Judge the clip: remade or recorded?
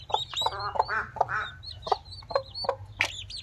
recorded